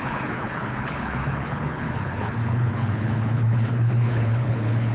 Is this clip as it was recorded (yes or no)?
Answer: no